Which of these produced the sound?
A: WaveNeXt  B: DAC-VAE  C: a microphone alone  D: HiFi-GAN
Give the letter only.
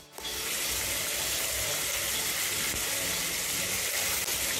C